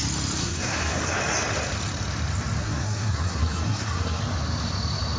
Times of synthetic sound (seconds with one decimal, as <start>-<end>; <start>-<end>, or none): 0.4-1.0; 2.6-4.2